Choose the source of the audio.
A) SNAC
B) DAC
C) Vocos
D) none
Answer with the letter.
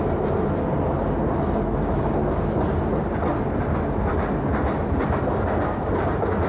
D